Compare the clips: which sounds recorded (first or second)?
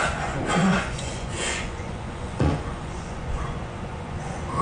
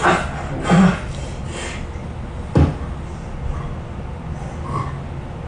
second